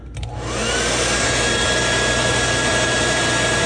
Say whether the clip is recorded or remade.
recorded